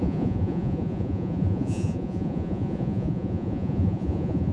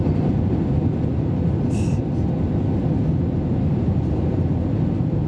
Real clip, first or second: second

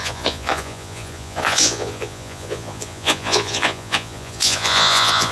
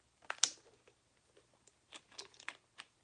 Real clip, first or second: second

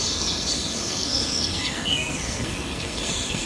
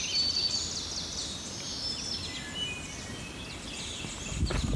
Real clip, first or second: second